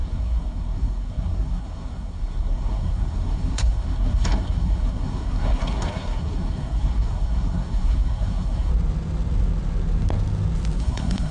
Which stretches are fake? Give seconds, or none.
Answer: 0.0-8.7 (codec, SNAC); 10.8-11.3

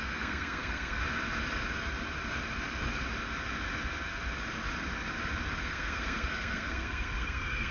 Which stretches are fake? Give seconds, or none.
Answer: 0.0-1.0 (codec, SNAC); 5.6-7.7